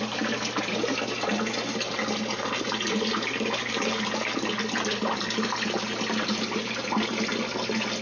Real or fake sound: real